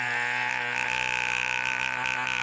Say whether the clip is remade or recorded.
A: recorded